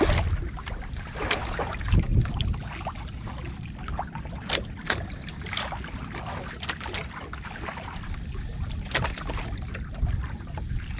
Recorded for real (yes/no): yes